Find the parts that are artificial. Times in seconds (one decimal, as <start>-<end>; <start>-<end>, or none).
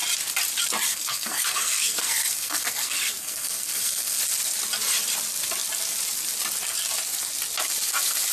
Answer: 0.9-4.2